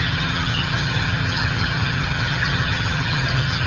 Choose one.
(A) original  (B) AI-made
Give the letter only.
B